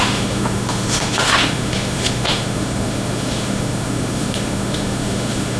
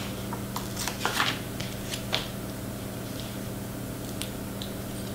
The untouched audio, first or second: second